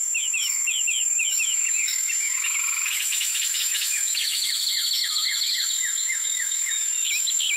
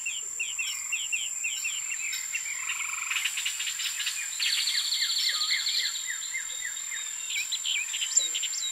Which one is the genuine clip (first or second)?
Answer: second